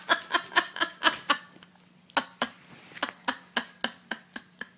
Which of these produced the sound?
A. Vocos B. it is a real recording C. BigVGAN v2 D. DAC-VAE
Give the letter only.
B